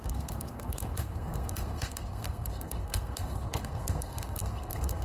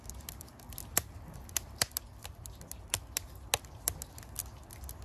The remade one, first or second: first